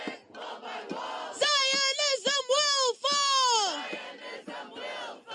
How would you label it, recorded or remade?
recorded